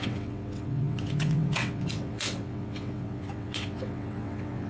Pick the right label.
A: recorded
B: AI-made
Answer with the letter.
B